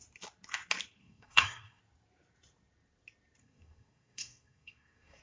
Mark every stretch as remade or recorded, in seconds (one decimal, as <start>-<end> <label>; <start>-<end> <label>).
0.0-1.0 recorded; 1.0-1.8 remade; 1.8-3.4 recorded; 3.4-5.2 remade